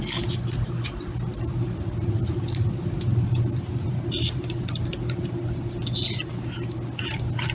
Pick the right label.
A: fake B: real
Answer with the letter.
B